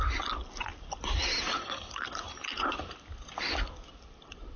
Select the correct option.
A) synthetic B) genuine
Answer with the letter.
B